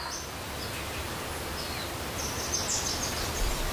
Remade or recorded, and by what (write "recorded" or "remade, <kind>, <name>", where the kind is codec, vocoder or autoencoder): recorded